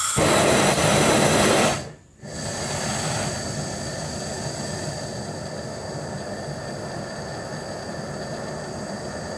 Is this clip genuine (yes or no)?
yes